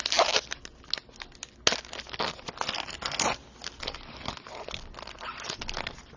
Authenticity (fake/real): real